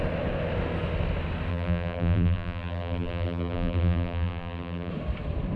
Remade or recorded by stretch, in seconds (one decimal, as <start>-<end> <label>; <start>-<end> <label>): 0.0-1.5 recorded; 1.5-4.9 remade; 4.9-5.6 recorded